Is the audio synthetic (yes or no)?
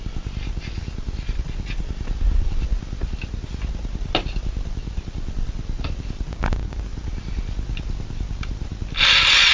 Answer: no